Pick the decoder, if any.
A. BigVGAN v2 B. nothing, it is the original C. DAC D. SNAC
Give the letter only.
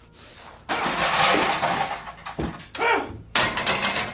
B